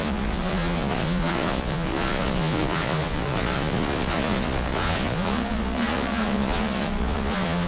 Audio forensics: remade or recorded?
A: remade